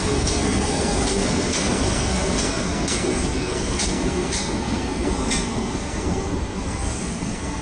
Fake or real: fake